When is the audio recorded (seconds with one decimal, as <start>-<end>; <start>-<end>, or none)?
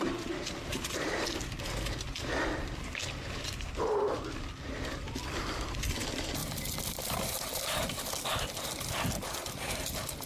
0.0-0.7; 1.6-6.4; 7.1-10.3